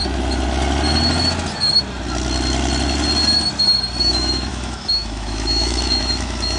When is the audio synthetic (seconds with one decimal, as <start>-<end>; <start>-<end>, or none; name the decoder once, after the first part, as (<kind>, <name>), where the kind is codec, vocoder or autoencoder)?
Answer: 4.0-6.6 (autoencoder, DAC-VAE)